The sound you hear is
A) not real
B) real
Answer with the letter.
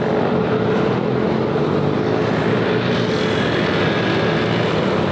B